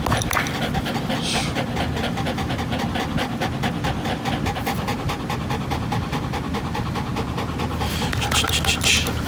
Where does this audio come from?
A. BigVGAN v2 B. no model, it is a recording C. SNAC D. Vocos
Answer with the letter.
B